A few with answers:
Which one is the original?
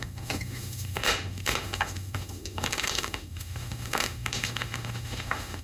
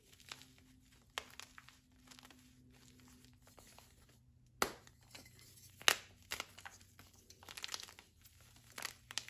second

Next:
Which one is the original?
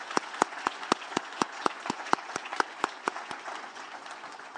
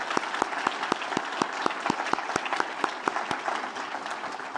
second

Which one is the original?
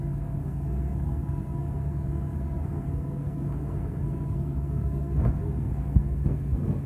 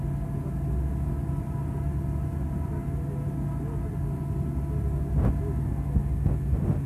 second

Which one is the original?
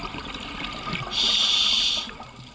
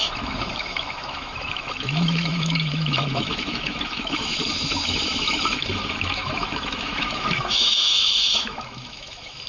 first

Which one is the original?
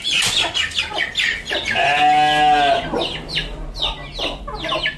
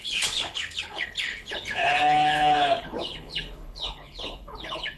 first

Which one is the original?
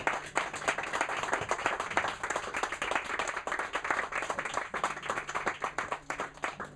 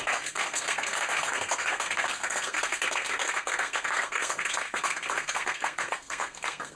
first